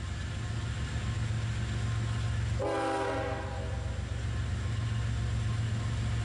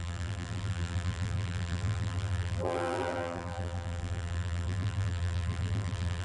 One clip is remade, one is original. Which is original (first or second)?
first